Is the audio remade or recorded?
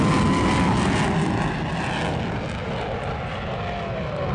recorded